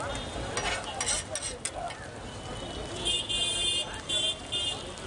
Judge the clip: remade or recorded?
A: recorded